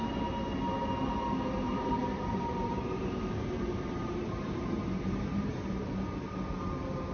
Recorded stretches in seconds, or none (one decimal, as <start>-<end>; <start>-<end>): 0.0-1.7; 5.9-7.1